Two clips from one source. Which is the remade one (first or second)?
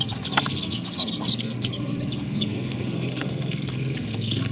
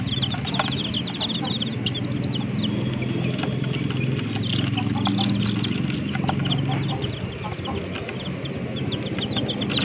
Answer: first